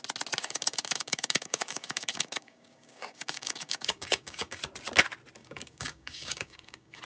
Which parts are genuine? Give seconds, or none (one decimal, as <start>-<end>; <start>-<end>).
0.0-0.4; 4.6-5.4